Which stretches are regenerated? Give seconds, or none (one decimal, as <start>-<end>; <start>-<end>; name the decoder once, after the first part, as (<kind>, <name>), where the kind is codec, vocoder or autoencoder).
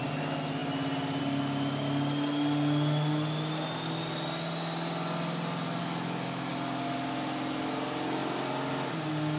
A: 5.8-6.5 (autoencoder, DAC-VAE)